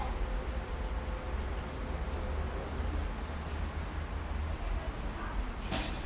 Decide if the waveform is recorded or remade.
recorded